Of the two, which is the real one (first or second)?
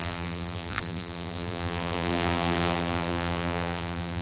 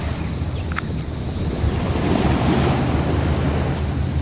second